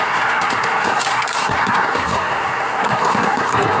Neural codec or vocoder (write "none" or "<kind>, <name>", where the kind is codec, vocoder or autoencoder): codec, SNAC